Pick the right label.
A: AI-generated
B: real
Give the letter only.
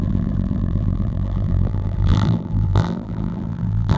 A